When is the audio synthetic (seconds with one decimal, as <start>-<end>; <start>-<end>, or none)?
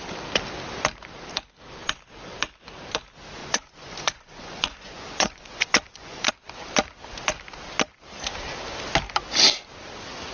3.4-6.3